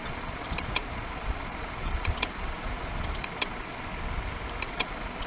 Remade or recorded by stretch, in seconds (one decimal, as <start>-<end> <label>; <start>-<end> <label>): 0.0-3.9 remade; 3.9-4.6 recorded; 4.6-5.3 remade